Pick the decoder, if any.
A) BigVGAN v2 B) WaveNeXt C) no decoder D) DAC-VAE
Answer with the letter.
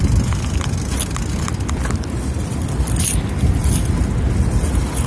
C